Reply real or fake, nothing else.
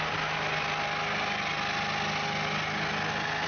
real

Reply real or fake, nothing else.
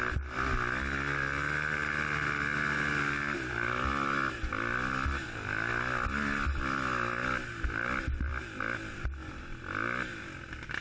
real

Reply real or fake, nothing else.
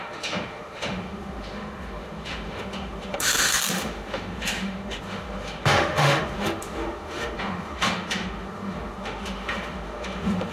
fake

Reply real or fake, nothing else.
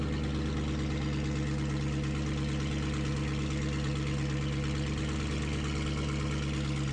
real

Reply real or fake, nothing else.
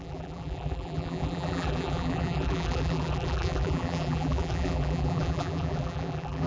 fake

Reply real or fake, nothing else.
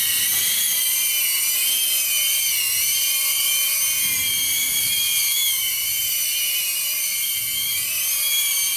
real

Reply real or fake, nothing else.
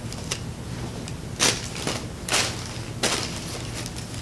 real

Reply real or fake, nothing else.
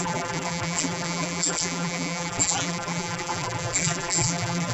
fake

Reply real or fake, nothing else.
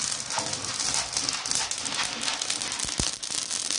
real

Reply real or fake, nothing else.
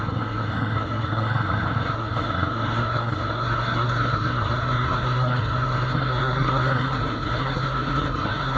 fake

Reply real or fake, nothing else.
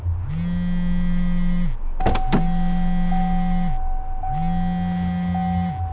real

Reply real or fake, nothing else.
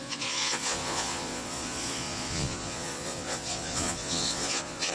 fake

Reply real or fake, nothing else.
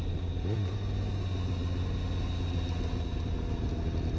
real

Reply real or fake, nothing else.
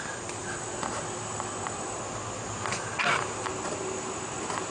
real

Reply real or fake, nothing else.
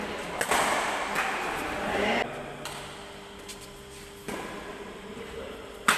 real